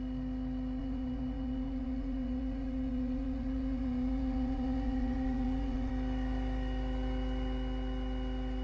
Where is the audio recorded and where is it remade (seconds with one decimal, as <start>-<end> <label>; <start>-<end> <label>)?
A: 0.0-0.8 recorded; 0.8-5.9 remade; 5.9-8.6 recorded